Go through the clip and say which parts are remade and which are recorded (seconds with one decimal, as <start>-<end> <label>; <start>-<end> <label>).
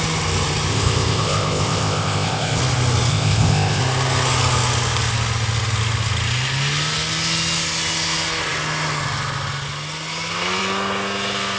0.0-0.7 recorded; 0.7-2.6 remade; 2.6-3.1 recorded; 3.1-3.8 remade; 3.8-11.6 recorded